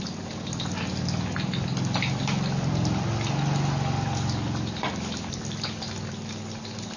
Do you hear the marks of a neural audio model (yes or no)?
no